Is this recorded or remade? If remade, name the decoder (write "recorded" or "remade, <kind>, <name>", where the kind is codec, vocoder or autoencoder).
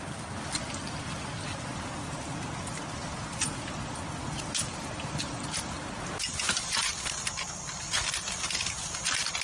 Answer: recorded